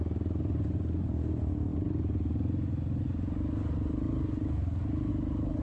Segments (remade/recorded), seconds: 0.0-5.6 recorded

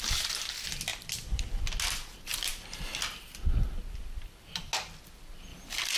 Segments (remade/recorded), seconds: 0.0-0.9 recorded; 0.9-1.5 remade; 1.5-6.0 recorded

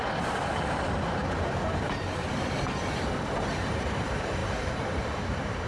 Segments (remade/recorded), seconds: 0.0-1.2 remade; 1.2-3.3 recorded; 3.3-5.7 remade